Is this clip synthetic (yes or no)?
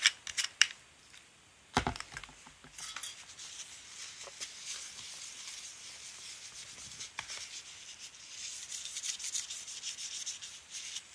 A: no